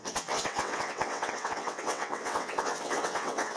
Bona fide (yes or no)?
no